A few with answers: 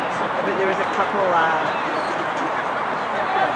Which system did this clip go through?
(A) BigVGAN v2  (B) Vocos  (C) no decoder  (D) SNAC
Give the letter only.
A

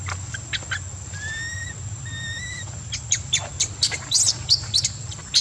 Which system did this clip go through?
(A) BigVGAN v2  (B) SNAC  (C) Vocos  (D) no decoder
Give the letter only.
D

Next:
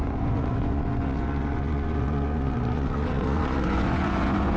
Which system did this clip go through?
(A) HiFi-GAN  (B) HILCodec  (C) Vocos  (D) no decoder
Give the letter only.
C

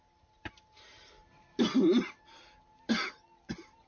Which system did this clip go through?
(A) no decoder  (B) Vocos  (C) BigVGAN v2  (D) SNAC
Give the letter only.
A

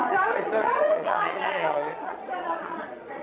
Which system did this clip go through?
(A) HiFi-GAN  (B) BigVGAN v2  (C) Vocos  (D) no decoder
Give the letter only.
C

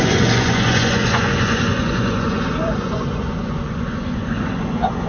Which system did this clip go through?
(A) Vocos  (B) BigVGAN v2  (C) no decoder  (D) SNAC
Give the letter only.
A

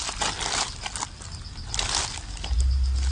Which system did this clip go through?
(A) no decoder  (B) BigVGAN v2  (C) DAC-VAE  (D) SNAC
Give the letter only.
A